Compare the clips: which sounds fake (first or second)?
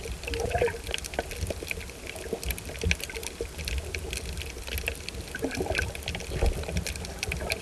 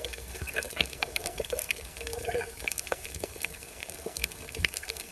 second